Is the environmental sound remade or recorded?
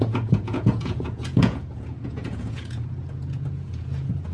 remade